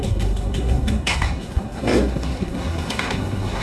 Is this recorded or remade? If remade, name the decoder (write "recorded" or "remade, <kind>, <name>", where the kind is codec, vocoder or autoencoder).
remade, codec, SNAC